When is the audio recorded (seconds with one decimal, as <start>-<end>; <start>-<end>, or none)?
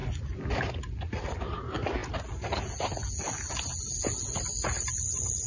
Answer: 0.0-5.5